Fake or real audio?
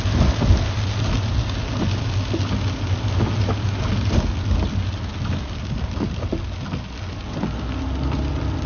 real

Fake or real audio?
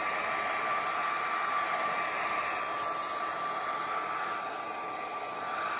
real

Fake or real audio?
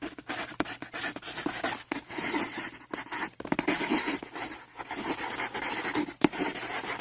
real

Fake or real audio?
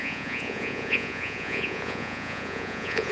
fake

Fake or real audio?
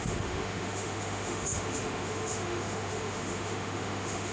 fake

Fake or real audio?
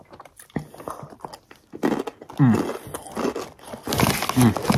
real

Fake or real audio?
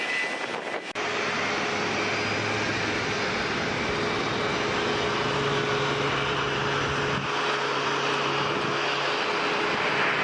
real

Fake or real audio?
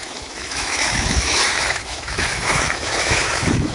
fake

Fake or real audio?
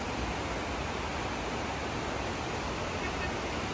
real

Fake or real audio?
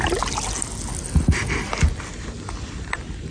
real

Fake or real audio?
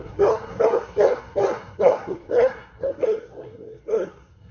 fake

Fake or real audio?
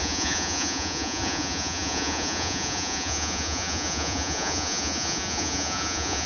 fake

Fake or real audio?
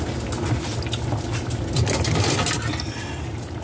real